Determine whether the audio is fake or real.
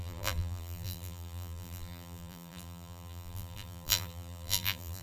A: fake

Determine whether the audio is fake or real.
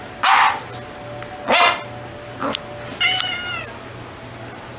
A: real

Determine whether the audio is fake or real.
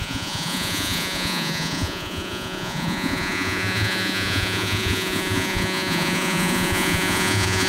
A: fake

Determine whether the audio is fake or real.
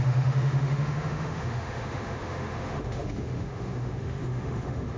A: fake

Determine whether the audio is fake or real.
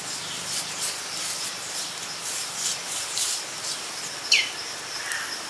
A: fake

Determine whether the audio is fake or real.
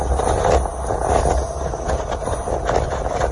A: real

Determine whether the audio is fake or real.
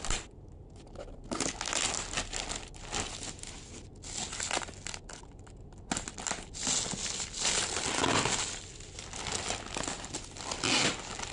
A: real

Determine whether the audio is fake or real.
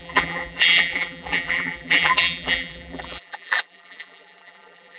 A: fake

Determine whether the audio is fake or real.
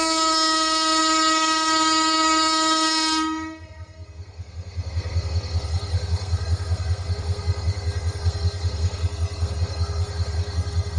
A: fake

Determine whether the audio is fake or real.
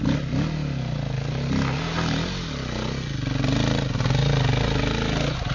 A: real